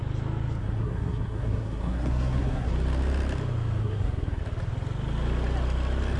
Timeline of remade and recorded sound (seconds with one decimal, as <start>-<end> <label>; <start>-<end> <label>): 0.0-0.6 recorded; 0.6-2.7 remade; 2.7-3.8 recorded; 3.8-4.4 remade; 4.4-6.2 recorded